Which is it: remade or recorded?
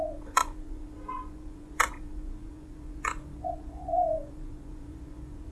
remade